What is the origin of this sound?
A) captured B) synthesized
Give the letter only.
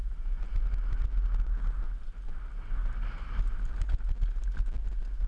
A